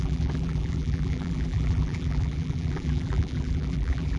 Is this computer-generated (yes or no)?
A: yes